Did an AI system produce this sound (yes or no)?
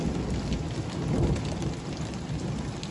no